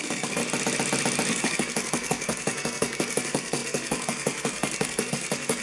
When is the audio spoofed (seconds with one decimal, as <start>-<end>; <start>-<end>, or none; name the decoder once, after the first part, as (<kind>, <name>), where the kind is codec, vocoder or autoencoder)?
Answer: 0.0-0.4 (codec, SNAC); 1.3-5.6